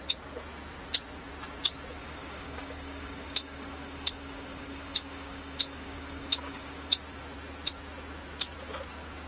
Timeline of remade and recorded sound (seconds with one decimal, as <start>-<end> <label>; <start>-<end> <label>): 0.0-2.0 recorded; 2.0-6.9 remade; 6.9-9.3 recorded